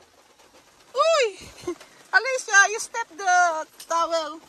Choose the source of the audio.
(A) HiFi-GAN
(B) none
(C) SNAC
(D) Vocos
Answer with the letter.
B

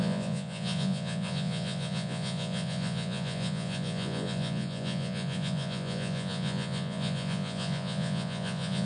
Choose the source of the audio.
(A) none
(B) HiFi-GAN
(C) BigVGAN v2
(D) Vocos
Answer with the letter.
D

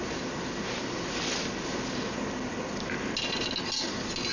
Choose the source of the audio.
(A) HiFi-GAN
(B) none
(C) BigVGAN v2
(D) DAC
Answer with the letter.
B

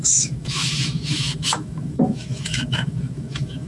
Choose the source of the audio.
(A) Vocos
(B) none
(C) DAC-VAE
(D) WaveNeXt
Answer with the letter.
C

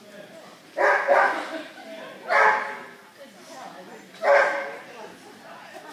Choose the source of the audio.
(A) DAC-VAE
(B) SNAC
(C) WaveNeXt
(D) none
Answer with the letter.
D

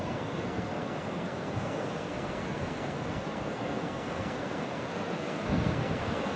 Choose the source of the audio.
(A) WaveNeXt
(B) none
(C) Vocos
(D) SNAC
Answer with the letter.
D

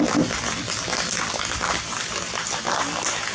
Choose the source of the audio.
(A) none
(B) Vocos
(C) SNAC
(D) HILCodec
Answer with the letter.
A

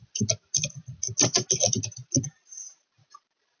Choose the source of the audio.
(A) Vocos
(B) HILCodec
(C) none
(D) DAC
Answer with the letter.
C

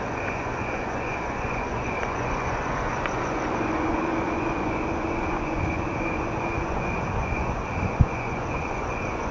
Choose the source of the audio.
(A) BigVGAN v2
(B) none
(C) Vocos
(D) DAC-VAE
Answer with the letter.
C